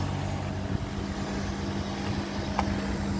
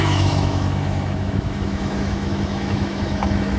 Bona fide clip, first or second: first